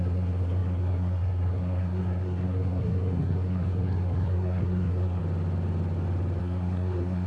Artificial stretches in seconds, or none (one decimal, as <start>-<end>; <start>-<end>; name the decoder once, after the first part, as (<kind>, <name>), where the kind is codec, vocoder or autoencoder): 0.0-5.2 (codec, SNAC); 6.4-7.3